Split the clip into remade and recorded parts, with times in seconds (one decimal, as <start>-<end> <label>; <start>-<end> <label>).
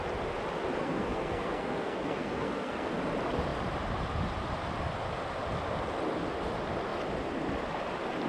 0.0-0.8 recorded; 0.8-2.9 remade; 2.9-8.3 recorded